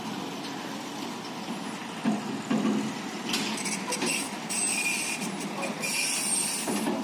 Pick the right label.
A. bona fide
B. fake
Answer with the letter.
A